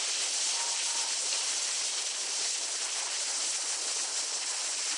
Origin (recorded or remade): recorded